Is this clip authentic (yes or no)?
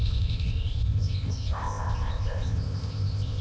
no